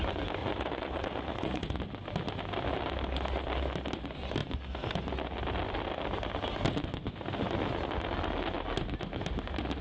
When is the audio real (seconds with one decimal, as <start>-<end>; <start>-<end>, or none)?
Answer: 0.0-0.4; 1.8-9.8